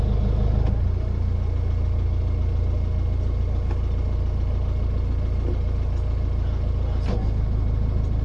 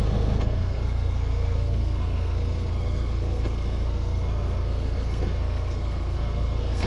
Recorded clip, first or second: first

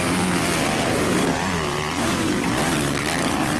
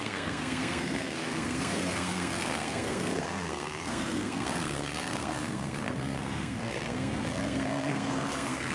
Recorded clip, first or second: first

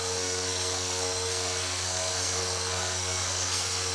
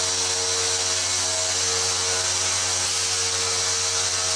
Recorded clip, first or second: second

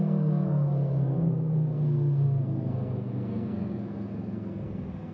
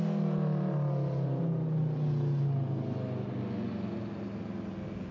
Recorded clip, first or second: second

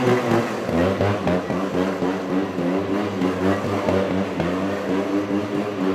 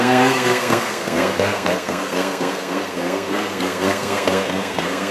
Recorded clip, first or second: first